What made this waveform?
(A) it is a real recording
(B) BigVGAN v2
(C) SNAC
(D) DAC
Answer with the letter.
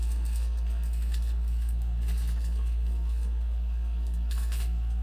C